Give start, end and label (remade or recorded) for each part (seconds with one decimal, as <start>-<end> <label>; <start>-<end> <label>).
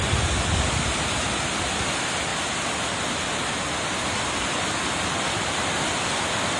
0.0-6.6 recorded